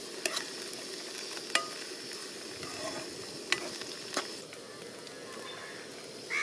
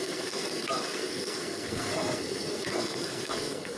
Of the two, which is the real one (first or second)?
first